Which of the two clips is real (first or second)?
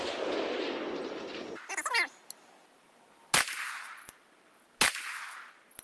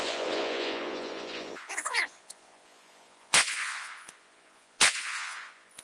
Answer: first